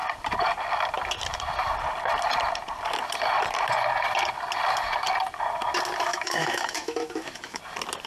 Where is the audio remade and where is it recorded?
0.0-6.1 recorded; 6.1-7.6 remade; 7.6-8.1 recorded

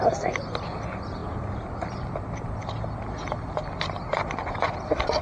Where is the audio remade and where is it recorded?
0.0-5.2 recorded

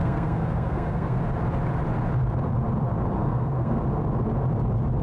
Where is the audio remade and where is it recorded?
0.0-1.2 remade; 1.2-3.2 recorded; 3.2-3.8 remade; 3.8-5.0 recorded

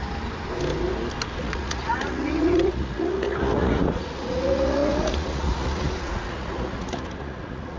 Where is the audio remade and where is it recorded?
0.0-1.4 recorded; 1.4-7.8 remade

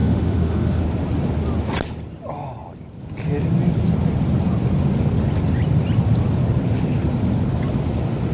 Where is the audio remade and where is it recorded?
0.0-0.8 remade; 0.8-8.3 recorded

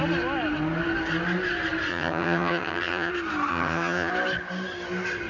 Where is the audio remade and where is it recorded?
0.0-1.9 recorded; 1.9-3.1 remade; 3.1-3.5 recorded; 3.5-4.1 remade; 4.1-5.3 recorded